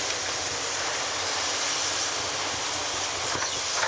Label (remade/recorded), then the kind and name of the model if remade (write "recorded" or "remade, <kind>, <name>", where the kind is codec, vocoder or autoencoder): recorded